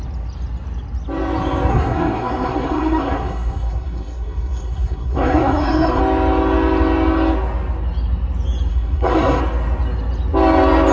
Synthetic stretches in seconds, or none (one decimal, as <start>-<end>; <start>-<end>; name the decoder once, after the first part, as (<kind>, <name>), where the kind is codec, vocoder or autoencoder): 1.7-6.0 (codec, SNAC); 8.7-9.4

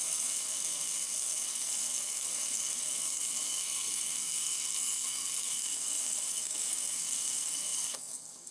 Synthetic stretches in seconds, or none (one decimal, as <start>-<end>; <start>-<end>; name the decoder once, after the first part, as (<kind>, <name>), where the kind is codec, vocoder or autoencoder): 0.0-8.5 (codec, SNAC)

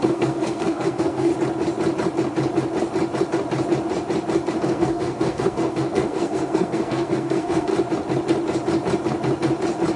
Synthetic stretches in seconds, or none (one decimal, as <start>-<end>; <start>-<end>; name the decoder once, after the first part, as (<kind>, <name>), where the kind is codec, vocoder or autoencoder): 0.0-1.3 (codec, SNAC); 4.6-7.7

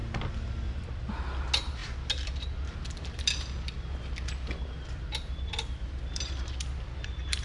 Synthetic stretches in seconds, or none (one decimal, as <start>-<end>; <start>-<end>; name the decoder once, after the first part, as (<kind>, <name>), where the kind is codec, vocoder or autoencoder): none

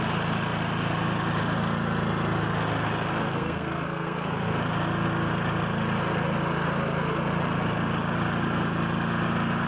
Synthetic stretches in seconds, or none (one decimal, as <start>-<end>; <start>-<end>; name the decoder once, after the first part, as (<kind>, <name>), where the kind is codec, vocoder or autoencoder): 3.2-4.5 (codec, SNAC)